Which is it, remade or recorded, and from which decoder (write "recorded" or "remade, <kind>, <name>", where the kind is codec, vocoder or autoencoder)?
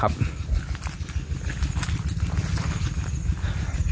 recorded